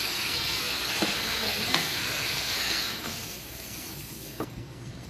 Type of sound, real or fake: fake